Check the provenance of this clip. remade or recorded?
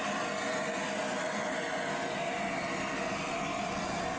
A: recorded